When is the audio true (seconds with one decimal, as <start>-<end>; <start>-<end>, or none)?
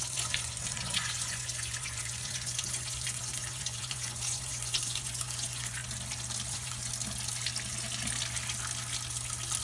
5.8-6.5; 6.9-9.6